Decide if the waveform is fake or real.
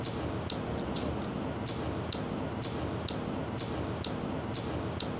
real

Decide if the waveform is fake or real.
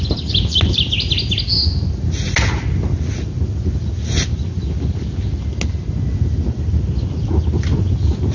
real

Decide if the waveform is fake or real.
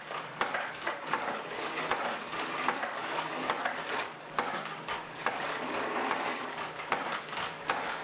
fake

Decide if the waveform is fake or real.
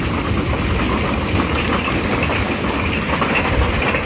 real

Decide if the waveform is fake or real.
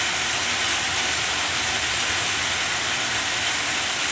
real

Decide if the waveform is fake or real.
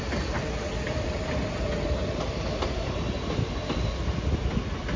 real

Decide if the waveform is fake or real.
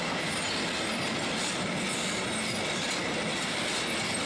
real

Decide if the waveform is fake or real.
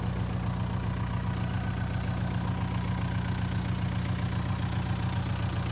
real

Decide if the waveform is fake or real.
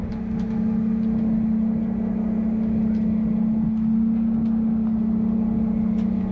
real